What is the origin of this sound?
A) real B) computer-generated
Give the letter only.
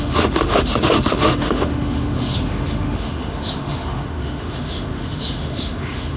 B